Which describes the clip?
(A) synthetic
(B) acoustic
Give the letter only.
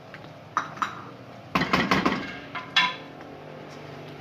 A